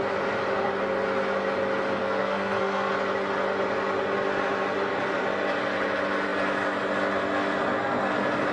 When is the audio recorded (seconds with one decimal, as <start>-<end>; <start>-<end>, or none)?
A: 0.0-2.0; 2.9-8.5